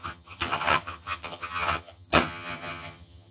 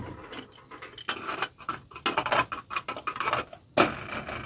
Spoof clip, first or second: first